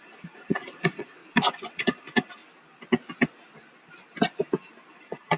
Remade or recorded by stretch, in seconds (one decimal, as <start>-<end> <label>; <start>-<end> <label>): 0.0-1.2 remade; 1.2-1.7 recorded; 1.7-2.4 remade; 2.4-4.9 recorded; 4.9-5.4 remade